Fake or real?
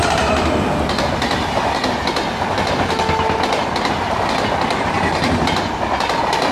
real